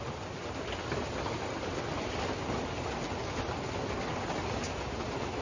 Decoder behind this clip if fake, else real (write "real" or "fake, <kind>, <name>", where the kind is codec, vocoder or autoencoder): real